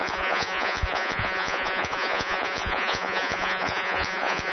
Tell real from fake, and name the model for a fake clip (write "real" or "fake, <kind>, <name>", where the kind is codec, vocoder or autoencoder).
fake, vocoder, Vocos